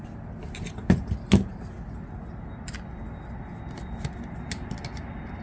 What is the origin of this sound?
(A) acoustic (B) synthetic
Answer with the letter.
A